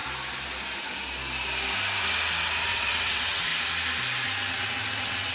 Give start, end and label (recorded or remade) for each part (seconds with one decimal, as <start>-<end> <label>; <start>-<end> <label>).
0.0-2.7 recorded; 2.7-3.5 remade; 3.5-4.5 recorded; 4.5-5.3 remade